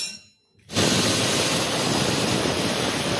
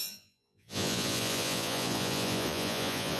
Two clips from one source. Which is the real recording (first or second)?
first